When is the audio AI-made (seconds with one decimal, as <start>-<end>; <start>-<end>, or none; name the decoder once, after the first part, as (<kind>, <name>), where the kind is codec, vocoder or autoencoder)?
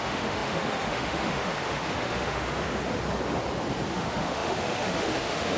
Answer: 0.0-2.7 (autoencoder, DAC-VAE); 3.9-5.6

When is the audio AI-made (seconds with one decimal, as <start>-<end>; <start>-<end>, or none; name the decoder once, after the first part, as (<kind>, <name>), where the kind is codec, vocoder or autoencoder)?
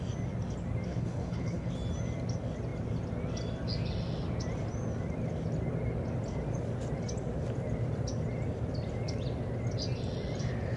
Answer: 0.9-1.7 (codec, HILCodec)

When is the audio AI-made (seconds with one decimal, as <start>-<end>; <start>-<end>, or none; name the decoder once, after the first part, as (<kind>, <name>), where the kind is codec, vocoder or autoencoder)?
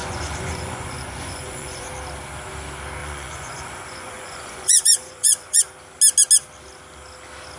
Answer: 0.0-1.9 (vocoder, Vocos); 3.0-5.6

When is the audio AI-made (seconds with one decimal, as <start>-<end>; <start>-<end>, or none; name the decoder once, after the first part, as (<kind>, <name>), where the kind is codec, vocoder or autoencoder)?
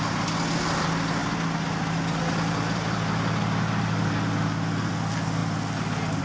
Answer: none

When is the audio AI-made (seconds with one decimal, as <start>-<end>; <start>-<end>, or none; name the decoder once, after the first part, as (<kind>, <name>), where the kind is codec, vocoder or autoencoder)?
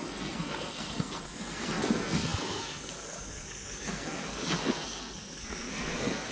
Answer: 0.0-6.3 (codec, SNAC)